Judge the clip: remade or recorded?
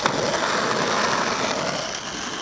recorded